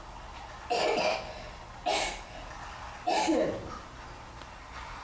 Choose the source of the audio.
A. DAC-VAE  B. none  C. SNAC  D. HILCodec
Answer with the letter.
B